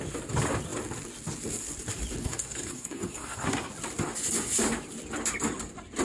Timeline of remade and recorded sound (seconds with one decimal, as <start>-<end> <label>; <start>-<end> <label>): 0.0-2.2 recorded; 2.2-3.7 remade; 3.7-6.0 recorded